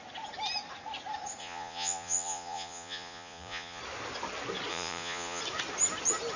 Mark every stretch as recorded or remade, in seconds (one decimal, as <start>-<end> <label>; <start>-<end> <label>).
0.0-1.4 recorded; 1.4-3.8 remade; 3.8-4.7 recorded; 4.7-5.4 remade; 5.4-6.4 recorded